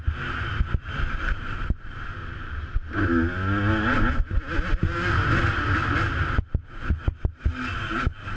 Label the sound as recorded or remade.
recorded